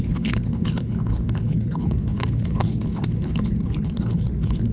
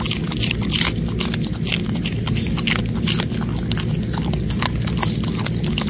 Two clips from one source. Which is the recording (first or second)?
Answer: second